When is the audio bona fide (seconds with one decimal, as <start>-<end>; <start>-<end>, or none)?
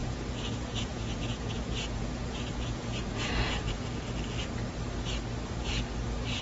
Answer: 3.8-6.4